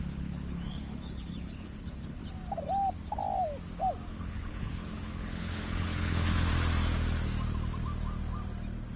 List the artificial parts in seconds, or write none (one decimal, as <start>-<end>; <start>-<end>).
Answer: 0.0-2.2; 4.1-6.5